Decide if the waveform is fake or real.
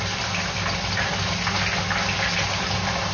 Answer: real